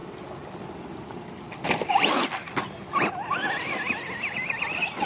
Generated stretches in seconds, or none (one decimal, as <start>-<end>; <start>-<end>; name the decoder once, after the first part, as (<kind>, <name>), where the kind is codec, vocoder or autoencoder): none